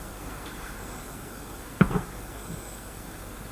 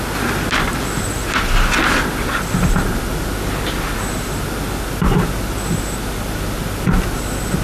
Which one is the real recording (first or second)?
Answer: second